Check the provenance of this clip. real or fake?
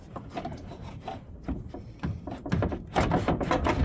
real